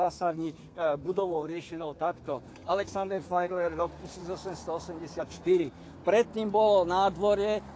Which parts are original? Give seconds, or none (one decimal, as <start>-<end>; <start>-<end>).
4.2-5.2; 6.0-7.8